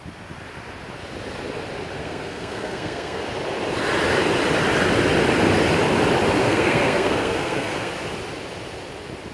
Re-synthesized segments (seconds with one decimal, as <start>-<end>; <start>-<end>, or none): 2.0-3.2; 6.4-7.9